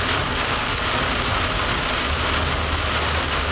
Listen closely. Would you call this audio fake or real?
real